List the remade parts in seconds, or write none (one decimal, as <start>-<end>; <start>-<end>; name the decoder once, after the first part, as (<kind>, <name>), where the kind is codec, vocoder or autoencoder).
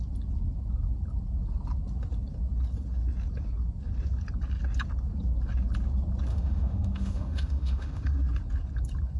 6.3-8.1 (autoencoder, DAC-VAE)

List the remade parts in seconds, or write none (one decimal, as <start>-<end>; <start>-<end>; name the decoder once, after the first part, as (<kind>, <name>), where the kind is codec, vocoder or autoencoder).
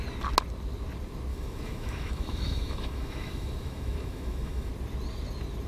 1.3-4.7 (autoencoder, DAC-VAE)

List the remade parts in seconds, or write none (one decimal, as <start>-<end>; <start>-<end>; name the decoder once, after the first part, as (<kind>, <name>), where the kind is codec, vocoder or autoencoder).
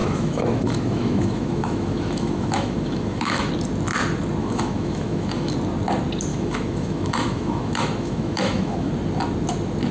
0.0-3.5 (autoencoder, DAC-VAE); 4.4-5.5; 6.3-8.9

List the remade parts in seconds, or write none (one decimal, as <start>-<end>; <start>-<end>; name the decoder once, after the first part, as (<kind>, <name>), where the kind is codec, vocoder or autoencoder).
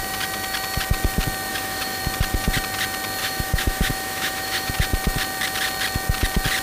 1.5-2.0 (autoencoder, DAC-VAE); 3.2-4.7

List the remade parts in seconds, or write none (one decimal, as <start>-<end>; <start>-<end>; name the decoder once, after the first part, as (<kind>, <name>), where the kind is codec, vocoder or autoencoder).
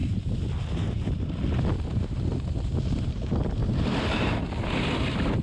none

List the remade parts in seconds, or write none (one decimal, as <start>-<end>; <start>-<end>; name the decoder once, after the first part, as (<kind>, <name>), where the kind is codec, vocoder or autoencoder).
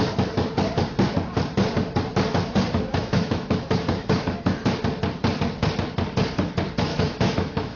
2.9-4.7 (autoencoder, DAC-VAE); 6.9-7.8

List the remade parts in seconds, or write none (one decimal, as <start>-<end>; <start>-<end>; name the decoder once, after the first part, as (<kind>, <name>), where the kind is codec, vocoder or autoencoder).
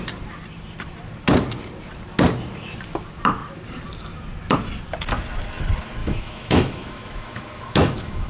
6.0-8.3 (autoencoder, DAC-VAE)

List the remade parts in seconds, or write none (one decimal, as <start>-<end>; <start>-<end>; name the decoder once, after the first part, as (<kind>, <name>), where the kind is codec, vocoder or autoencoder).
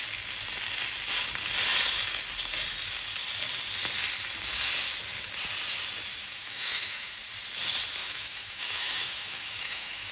6.2-7.2 (autoencoder, DAC-VAE); 8.0-10.1